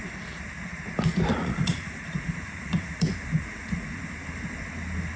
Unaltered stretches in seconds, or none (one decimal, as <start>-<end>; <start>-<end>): 0.0-1.3; 4.0-5.2